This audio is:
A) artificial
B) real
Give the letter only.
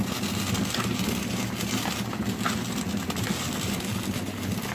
B